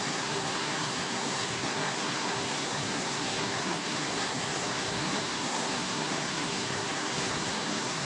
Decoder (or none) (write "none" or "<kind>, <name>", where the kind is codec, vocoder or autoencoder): codec, SNAC